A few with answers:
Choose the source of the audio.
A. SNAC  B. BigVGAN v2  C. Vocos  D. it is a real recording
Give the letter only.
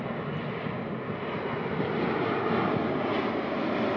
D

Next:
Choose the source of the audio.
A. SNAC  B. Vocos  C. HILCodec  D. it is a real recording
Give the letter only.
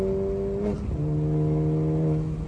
D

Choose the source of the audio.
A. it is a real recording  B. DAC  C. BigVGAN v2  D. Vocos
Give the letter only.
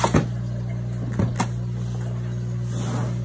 A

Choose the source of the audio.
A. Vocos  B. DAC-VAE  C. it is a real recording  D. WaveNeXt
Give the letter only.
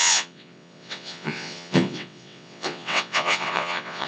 D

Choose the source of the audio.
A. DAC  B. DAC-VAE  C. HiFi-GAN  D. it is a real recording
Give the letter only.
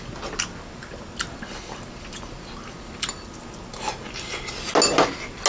D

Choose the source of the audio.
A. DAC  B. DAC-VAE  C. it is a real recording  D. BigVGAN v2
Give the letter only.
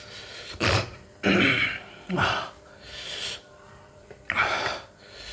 D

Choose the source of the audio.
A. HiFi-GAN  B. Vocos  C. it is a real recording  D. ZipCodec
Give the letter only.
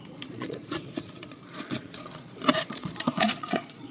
B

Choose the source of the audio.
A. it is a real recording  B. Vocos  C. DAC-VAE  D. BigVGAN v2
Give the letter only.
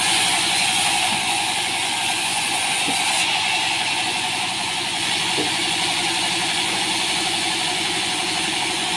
B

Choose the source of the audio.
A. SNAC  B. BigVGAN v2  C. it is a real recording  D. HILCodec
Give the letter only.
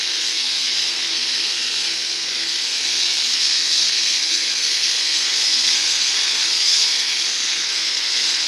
A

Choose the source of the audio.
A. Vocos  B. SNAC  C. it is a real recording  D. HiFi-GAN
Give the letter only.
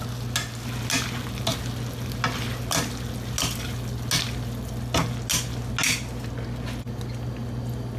C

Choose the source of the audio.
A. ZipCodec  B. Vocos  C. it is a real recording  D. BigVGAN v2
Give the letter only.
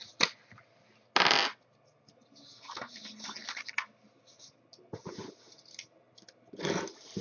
C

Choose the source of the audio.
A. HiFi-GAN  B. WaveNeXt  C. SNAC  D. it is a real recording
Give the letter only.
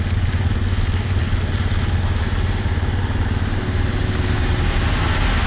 D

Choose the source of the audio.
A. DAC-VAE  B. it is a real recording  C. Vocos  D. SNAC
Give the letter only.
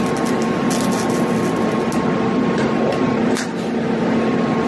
B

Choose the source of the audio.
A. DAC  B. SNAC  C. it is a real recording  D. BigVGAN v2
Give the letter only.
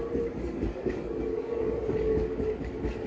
A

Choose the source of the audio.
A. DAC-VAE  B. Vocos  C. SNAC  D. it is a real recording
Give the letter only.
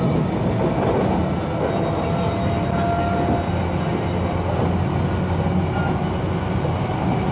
D